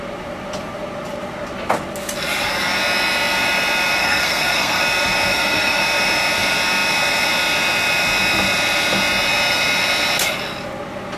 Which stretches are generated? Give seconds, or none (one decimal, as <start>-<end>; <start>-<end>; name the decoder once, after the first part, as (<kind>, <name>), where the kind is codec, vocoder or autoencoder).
4.0-4.8 (codec, SNAC); 5.3-5.8